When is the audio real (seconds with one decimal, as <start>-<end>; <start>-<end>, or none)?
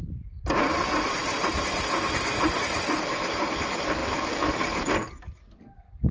0.0-6.1